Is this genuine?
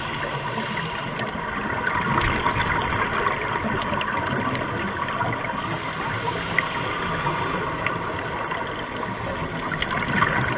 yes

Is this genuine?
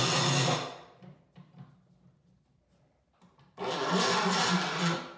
yes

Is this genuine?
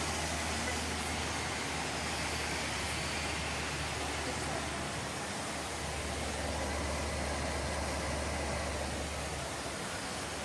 yes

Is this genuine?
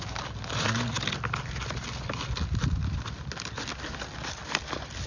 yes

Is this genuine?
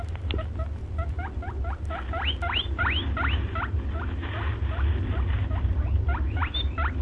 yes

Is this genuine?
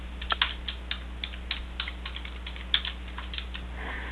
yes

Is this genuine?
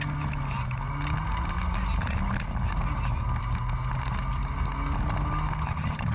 yes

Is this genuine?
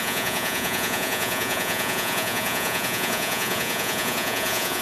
no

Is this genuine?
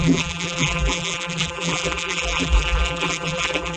no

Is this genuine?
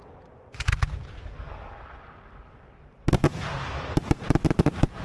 yes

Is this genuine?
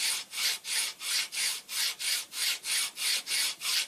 no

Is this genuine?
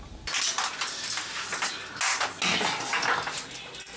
yes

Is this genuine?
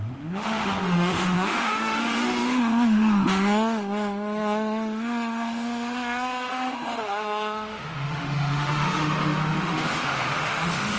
no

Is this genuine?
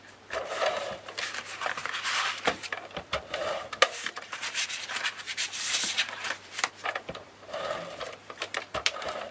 no